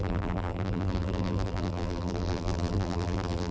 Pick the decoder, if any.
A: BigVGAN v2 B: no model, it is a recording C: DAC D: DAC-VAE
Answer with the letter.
A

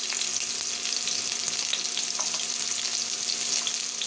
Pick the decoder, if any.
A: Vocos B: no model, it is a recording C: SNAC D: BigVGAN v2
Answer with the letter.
B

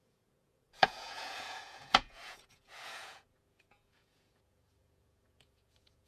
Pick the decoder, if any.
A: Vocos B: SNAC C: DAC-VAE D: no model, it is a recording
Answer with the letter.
A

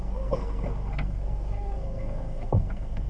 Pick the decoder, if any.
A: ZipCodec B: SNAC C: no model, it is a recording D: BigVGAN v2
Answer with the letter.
B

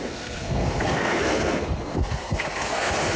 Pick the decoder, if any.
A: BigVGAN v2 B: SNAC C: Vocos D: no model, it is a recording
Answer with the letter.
B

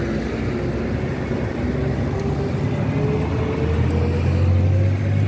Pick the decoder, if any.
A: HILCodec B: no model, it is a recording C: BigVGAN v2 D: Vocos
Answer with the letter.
B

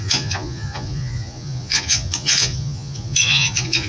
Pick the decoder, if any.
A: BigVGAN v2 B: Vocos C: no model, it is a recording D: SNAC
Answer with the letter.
B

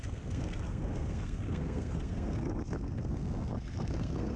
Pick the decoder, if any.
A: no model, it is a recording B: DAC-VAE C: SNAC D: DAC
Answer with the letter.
C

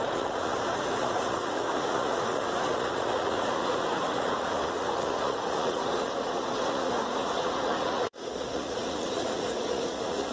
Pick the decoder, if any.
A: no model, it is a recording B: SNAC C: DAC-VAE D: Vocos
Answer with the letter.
D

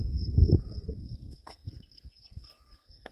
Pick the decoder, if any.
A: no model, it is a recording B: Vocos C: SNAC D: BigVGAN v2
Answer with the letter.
C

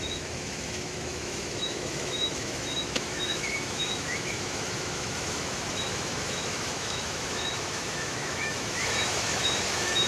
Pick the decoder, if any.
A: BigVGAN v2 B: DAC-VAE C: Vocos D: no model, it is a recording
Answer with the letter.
B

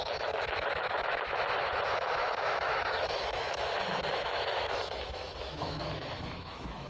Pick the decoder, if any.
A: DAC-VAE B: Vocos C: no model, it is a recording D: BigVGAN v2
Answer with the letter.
A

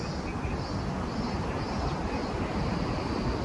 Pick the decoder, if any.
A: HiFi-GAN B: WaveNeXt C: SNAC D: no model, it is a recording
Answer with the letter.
D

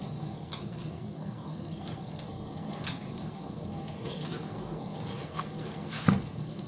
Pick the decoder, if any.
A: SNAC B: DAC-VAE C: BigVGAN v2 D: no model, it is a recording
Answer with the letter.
A